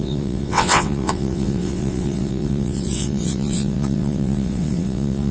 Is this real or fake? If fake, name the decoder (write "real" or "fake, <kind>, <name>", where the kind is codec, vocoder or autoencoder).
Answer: fake, vocoder, WaveNeXt